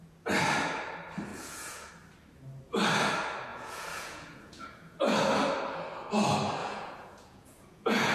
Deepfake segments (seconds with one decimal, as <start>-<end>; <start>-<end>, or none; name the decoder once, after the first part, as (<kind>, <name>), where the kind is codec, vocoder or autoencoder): 1.3-1.9 (vocoder, Vocos); 3.5-5.0; 6.6-8.1